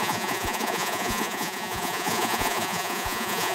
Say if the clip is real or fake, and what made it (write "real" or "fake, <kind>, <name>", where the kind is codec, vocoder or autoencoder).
fake, vocoder, Vocos